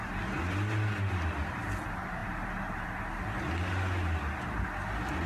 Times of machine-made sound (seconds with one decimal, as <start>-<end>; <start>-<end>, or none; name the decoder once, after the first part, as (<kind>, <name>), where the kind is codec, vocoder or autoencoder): none